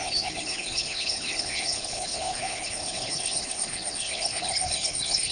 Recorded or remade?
remade